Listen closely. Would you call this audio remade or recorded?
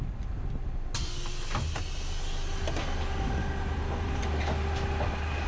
recorded